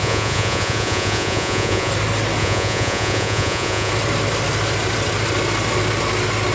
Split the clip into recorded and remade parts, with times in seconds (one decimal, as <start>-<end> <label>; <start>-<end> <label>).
0.0-1.9 remade; 1.9-2.4 recorded; 2.4-3.9 remade; 3.9-6.5 recorded